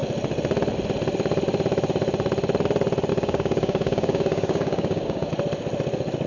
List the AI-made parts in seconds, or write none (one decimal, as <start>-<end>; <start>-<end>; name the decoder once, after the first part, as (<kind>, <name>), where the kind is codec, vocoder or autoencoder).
3.1-5.3 (codec, DAC)